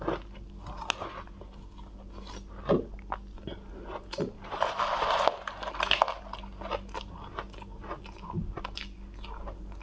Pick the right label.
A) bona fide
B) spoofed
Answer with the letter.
A